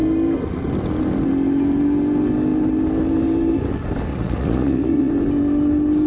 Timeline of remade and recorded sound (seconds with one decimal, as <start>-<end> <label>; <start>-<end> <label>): 0.0-4.1 recorded; 4.1-5.1 remade; 5.1-6.1 recorded

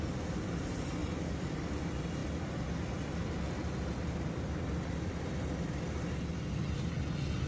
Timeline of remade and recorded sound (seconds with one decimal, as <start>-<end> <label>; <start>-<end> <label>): 0.0-1.0 recorded; 1.0-1.8 remade; 1.8-7.5 recorded

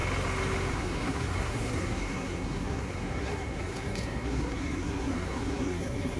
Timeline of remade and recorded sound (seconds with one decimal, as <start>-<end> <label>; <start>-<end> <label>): 0.0-0.7 recorded; 0.7-6.2 remade